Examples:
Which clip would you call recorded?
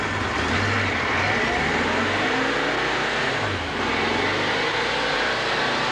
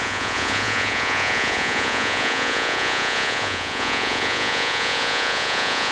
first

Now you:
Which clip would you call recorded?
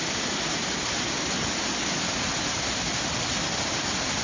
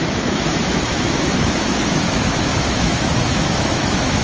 first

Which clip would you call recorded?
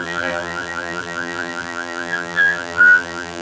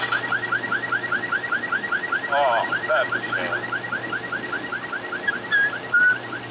second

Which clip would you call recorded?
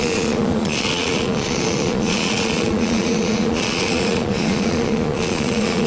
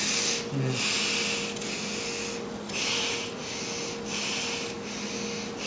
second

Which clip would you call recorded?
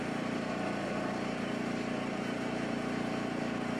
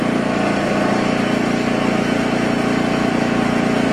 second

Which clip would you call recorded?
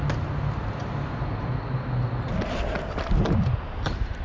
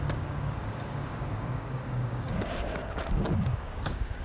first